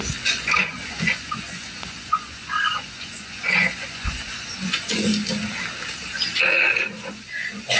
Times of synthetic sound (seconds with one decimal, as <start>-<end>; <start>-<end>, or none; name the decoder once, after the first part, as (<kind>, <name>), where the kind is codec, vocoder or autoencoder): 0.0-5.1 (vocoder, Vocos); 6.8-7.8